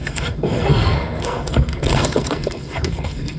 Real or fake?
fake